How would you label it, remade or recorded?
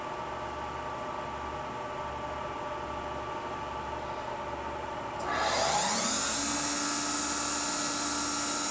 recorded